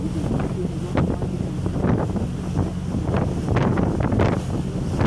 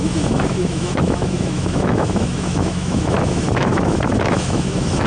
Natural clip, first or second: first